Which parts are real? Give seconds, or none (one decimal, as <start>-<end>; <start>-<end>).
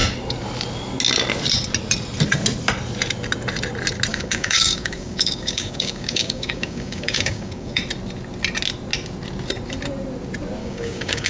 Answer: 0.0-4.1; 7.8-10.6